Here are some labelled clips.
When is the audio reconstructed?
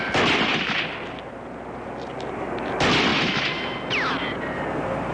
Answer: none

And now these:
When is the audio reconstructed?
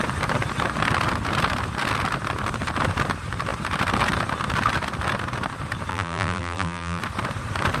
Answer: 5.9-7.0 (vocoder, BigVGAN v2)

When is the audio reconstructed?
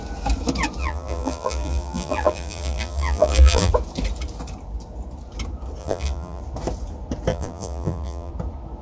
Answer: 0.8-3.7 (vocoder, BigVGAN v2); 5.8-6.4; 7.3-8.3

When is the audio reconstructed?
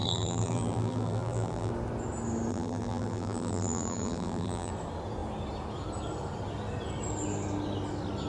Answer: 0.0-1.7 (vocoder, BigVGAN v2); 2.5-4.7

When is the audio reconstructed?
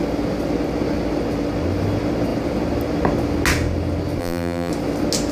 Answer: 4.2-4.7 (vocoder, BigVGAN v2)